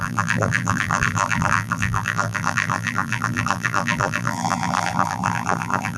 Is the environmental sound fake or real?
fake